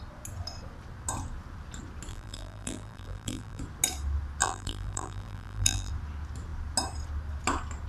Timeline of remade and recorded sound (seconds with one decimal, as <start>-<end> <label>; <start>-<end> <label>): 0.0-2.1 recorded; 2.1-3.6 remade; 3.6-4.4 recorded; 4.4-5.9 remade; 5.9-7.9 recorded